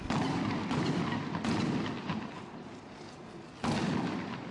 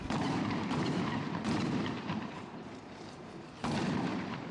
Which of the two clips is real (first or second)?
first